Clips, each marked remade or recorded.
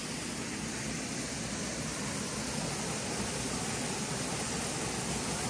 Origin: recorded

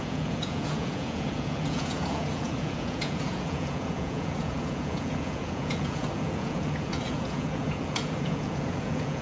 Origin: remade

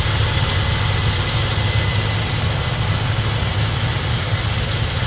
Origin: recorded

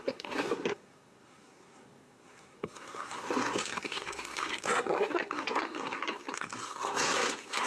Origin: remade